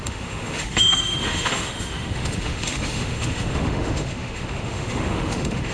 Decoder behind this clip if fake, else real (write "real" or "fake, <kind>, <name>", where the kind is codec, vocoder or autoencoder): fake, autoencoder, DAC-VAE